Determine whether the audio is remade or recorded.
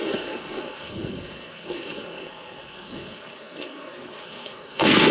remade